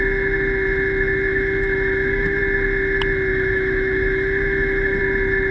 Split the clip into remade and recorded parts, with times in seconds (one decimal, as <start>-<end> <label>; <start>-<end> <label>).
0.0-1.3 recorded; 1.3-2.4 remade; 2.4-3.3 recorded; 3.3-5.0 remade; 5.0-5.5 recorded